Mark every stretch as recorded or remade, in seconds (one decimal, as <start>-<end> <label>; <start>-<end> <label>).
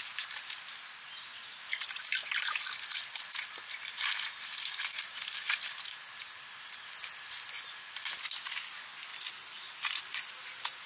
0.0-10.9 recorded